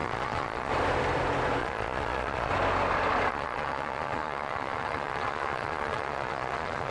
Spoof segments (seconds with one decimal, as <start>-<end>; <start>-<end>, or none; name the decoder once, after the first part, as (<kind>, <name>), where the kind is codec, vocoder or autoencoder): 0.0-0.7 (vocoder, Vocos); 1.6-2.5; 3.3-6.9